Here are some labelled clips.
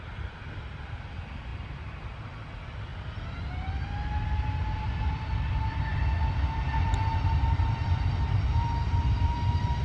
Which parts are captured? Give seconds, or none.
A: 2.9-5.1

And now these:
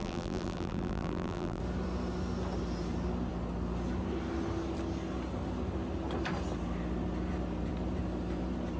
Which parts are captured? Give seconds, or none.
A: 1.6-8.8